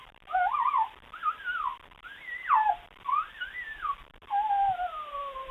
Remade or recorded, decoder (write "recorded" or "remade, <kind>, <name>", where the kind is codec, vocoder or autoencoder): recorded